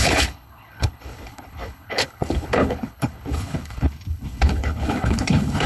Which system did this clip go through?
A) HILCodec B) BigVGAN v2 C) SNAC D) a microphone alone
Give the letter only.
A